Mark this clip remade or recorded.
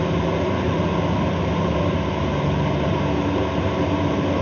recorded